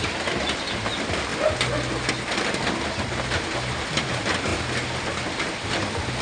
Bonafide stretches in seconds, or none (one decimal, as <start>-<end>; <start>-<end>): 0.0-6.2